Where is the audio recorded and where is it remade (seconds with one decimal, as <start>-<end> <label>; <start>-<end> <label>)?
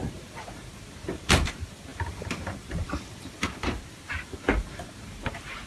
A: 0.0-5.7 remade